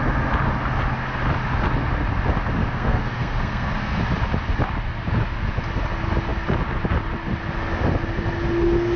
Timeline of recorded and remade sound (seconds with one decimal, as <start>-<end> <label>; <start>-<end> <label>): 0.0-2.6 recorded; 2.6-4.0 remade; 4.0-9.0 recorded